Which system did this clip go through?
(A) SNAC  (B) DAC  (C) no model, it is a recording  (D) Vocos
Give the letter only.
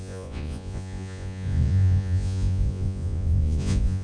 D